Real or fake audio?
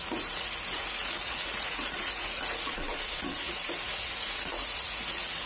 fake